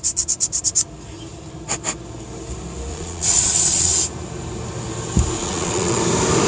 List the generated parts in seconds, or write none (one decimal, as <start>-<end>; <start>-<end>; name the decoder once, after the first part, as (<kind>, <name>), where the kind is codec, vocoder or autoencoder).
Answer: 2.9-3.9 (vocoder, Vocos); 5.4-6.0